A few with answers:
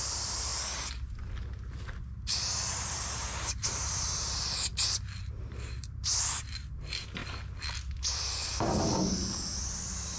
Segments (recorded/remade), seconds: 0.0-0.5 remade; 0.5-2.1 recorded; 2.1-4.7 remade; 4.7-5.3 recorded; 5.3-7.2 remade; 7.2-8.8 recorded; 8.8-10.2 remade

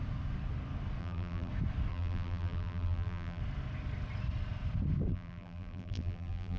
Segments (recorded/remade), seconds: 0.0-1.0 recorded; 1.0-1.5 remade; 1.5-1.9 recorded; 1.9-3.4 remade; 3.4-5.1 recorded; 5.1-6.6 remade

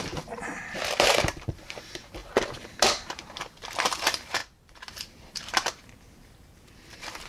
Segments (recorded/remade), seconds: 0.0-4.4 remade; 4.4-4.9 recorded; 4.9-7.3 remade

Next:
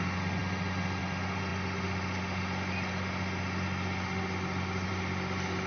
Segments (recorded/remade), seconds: 0.0-5.7 recorded